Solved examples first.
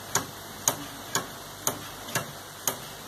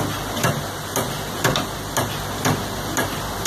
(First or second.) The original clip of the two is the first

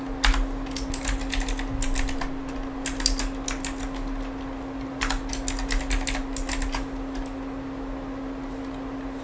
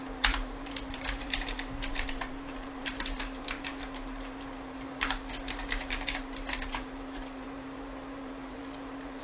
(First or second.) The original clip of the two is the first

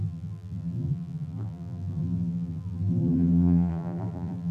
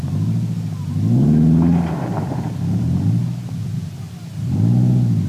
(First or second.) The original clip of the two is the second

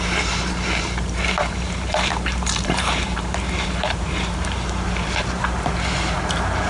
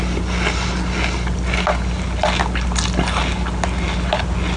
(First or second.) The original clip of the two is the second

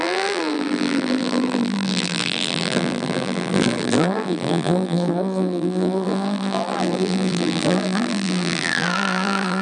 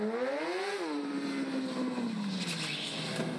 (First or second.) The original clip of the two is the second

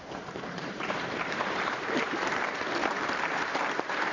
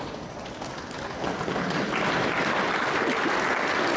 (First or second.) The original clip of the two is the second